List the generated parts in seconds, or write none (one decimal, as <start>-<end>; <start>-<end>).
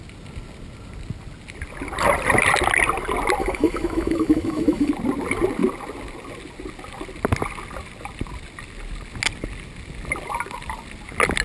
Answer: 3.4-4.9